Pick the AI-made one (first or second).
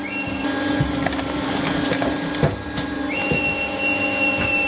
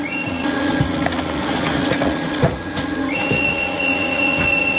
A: second